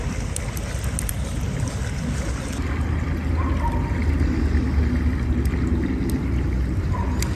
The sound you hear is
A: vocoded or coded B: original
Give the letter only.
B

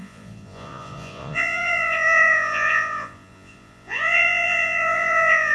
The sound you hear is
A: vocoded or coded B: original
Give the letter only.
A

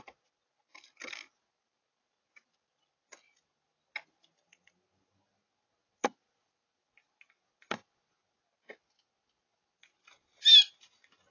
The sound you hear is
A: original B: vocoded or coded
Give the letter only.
A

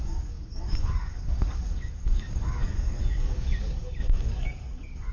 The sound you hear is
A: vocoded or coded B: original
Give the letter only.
A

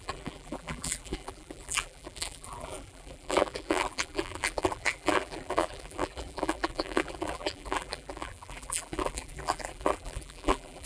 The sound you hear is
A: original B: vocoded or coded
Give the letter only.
B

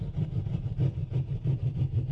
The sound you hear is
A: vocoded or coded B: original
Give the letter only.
A